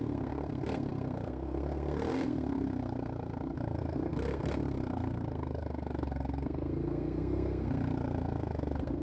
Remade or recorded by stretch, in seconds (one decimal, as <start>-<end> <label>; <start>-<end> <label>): 0.0-9.0 remade